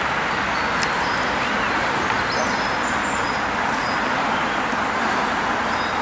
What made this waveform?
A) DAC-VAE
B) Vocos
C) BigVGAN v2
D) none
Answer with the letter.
D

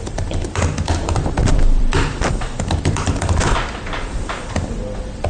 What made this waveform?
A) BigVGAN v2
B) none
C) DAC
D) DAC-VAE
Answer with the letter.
A